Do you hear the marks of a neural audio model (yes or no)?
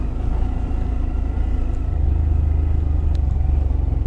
no